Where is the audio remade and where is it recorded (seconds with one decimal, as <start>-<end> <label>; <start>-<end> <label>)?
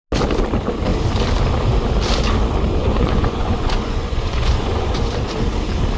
0.0-2.8 recorded; 2.8-5.1 remade; 5.1-6.0 recorded